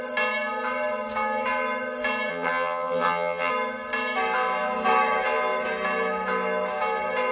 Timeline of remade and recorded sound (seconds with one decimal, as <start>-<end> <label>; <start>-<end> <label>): 0.0-2.3 recorded; 2.3-3.5 remade; 3.5-7.3 recorded